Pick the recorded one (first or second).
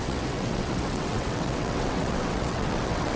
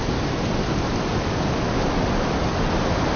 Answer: second